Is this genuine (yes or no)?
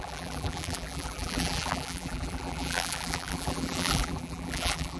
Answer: no